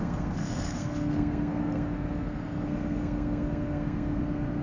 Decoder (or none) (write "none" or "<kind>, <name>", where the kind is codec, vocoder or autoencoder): codec, SNAC